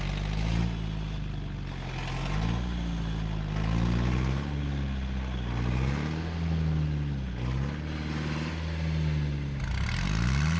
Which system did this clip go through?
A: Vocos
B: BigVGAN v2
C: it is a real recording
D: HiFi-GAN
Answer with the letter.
C